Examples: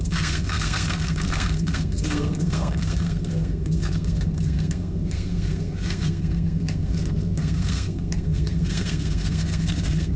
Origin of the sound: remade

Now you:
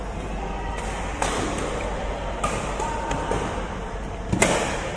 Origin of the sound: recorded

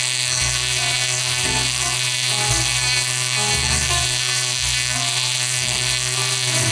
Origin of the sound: remade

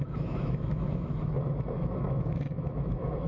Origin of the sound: remade